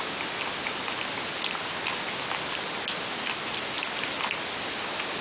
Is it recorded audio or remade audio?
recorded